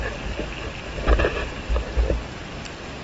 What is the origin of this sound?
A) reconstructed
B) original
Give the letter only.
B